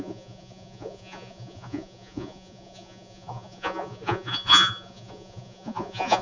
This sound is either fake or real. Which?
fake